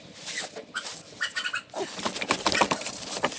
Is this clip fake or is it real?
real